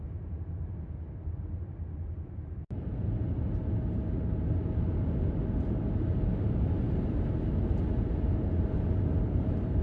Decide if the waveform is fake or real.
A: real